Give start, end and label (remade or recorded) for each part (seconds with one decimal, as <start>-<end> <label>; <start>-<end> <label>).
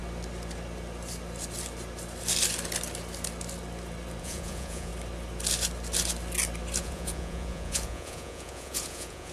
0.0-4.2 recorded; 4.2-4.9 remade; 4.9-6.8 recorded; 6.8-9.3 remade